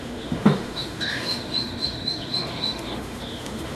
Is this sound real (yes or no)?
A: no